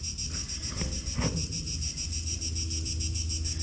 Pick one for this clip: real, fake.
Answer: real